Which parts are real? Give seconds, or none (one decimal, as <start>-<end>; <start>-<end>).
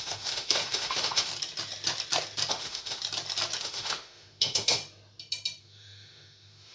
1.3-2.5; 3.0-3.6; 4.8-5.6